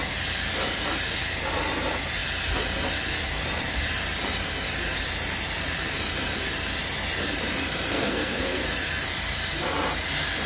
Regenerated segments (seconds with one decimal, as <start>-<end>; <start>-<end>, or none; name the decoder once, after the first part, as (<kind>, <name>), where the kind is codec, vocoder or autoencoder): 7.9-8.6 (codec, SNAC)